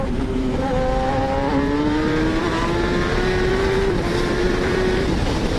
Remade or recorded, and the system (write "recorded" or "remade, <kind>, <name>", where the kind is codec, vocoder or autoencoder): remade, vocoder, BigVGAN v2